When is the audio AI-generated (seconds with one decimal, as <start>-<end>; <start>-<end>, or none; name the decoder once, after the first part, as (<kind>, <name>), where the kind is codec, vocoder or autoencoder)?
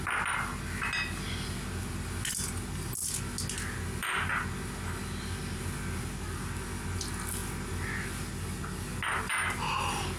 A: none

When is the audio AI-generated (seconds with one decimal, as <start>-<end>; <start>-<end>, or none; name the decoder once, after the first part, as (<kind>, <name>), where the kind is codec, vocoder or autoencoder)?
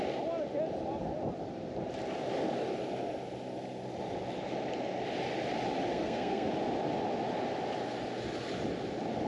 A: 5.9-6.5 (codec, SNAC)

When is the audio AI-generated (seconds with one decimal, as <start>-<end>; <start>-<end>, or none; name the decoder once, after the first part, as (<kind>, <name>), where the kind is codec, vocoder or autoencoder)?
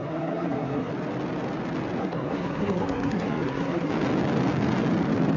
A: 0.0-0.9 (codec, SNAC); 2.0-3.9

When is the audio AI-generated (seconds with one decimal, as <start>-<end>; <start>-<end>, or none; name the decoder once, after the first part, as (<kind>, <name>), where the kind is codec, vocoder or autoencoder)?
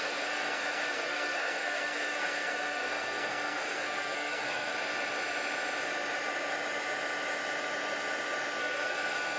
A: 0.0-4.7 (codec, SNAC); 8.6-9.4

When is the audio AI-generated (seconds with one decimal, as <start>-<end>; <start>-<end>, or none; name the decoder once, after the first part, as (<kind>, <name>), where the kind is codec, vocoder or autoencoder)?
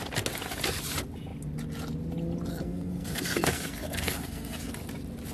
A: 2.5-4.7 (codec, SNAC)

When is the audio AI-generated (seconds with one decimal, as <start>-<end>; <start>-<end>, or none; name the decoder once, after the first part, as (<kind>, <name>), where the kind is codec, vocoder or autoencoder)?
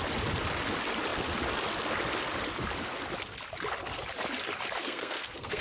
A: 4.8-5.6 (codec, SNAC)